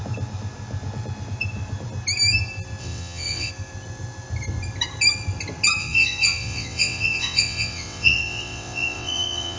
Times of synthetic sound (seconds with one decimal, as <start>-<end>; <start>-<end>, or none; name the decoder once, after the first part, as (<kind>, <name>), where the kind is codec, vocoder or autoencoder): 2.8-3.5 (vocoder, WaveNeXt); 5.8-9.6